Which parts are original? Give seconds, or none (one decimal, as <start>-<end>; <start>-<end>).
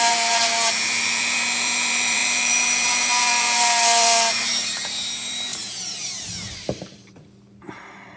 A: none